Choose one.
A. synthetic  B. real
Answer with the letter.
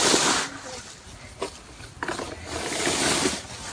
B